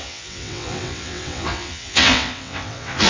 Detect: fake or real fake